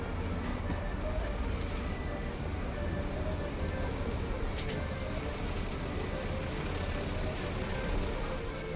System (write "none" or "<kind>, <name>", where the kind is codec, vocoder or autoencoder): none